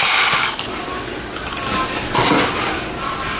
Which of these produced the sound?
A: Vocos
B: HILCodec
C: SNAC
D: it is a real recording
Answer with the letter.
D